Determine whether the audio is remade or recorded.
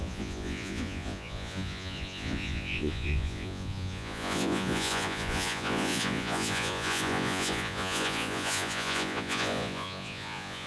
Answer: remade